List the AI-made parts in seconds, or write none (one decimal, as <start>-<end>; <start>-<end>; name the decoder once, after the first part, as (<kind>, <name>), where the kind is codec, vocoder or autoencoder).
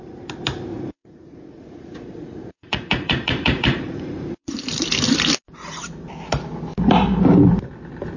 0.7-4.6 (vocoder, Vocos)